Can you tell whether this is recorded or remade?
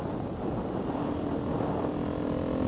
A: recorded